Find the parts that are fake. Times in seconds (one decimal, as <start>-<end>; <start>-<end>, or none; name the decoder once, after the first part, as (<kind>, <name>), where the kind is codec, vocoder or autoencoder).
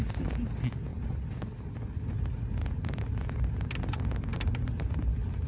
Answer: none